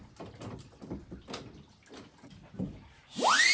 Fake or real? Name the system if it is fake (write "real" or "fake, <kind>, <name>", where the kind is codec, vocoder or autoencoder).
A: real